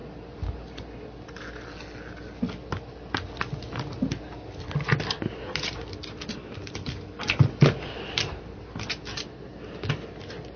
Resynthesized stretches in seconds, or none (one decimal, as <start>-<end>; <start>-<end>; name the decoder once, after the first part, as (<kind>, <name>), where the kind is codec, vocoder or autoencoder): none